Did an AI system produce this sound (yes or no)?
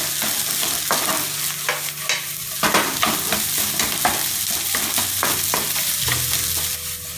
no